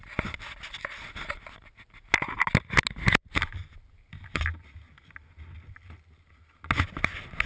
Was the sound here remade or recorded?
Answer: recorded